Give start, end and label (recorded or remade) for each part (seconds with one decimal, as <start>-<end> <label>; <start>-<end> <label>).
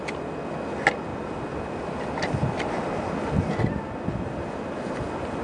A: 0.0-1.1 recorded; 1.1-2.8 remade; 2.8-5.4 recorded